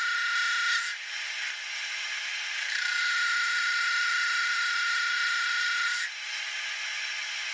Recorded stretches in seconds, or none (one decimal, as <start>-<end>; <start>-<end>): 0.0-0.9; 1.4-2.3; 6.4-7.5